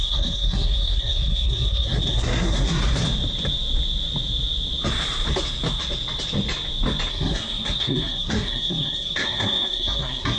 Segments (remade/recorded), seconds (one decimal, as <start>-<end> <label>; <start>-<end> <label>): 0.0-2.8 remade; 2.8-7.1 recorded; 7.1-10.4 remade

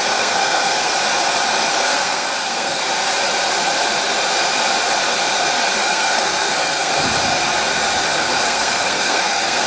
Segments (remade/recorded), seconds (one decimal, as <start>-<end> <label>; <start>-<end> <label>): 0.0-0.9 remade; 0.9-1.7 recorded; 1.7-2.8 remade; 2.8-5.8 recorded; 5.8-6.9 remade; 6.9-8.3 recorded; 8.3-9.7 remade

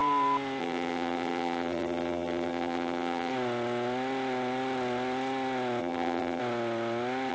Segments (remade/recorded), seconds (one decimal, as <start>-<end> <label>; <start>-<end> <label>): 0.0-0.6 recorded; 0.6-3.3 remade; 3.3-5.8 recorded; 5.8-6.4 remade; 6.4-7.3 recorded